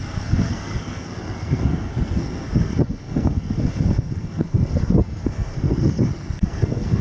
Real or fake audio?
fake